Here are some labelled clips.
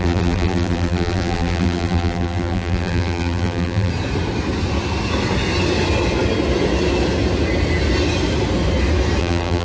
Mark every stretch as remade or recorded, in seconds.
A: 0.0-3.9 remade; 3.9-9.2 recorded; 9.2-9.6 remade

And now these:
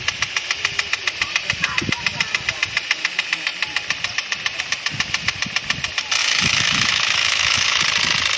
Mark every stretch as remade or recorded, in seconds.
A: 0.0-6.2 recorded; 6.2-7.8 remade; 7.8-8.4 recorded

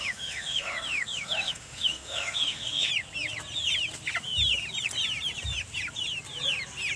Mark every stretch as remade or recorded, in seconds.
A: 0.0-2.9 remade; 2.9-7.0 recorded